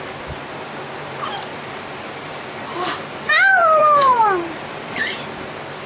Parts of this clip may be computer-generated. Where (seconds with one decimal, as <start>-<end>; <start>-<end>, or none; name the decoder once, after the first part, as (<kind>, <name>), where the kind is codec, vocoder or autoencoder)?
1.5-5.0 (vocoder, BigVGAN v2)